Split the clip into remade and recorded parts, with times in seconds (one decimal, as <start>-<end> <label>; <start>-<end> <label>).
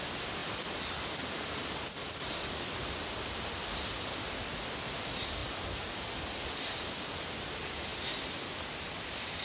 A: 0.0-0.4 recorded; 0.4-2.8 remade; 2.8-5.4 recorded; 5.4-6.6 remade; 6.6-9.4 recorded